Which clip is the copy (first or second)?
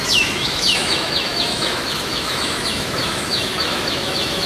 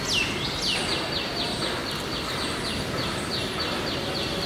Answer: first